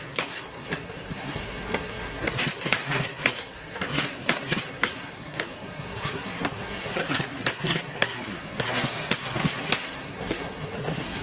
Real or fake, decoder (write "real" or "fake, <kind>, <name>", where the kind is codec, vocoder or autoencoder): fake, codec, SNAC